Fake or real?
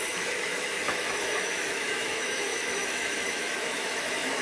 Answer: fake